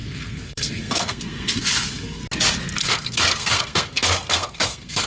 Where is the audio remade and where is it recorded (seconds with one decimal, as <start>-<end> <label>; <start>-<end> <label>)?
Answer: 0.0-2.2 remade; 2.2-2.8 recorded; 2.8-5.1 remade